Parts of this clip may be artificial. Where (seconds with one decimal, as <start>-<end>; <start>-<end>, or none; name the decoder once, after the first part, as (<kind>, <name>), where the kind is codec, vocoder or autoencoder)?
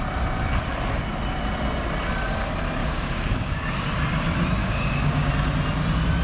2.8-4.0 (codec, DAC); 4.6-5.3